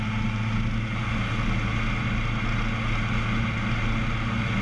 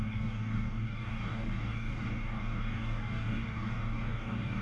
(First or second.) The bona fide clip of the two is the first